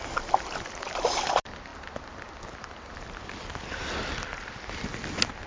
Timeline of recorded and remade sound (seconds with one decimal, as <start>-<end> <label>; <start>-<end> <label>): 0.0-5.5 recorded